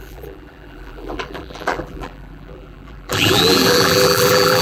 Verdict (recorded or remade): remade